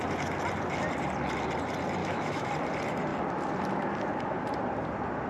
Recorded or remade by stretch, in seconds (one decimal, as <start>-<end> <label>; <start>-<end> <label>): 0.0-2.0 recorded; 2.0-2.5 remade; 2.5-5.3 recorded